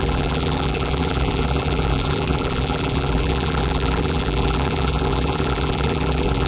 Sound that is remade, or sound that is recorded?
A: remade